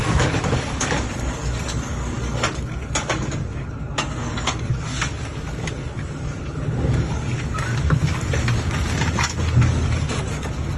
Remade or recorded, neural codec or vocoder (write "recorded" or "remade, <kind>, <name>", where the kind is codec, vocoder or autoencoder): remade, codec, DAC